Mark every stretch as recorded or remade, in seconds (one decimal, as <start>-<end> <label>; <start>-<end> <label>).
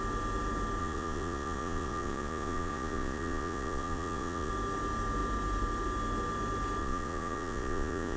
0.0-0.8 recorded; 0.8-4.5 remade; 4.5-6.8 recorded; 6.8-8.2 remade